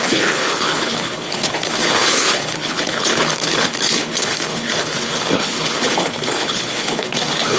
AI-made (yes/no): yes